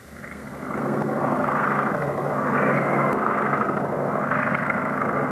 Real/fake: fake